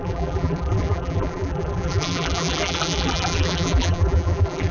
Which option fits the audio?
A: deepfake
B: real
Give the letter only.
A